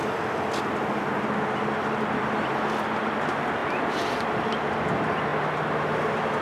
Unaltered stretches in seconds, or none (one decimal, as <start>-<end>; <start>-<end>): 0.0-3.6; 4.4-6.4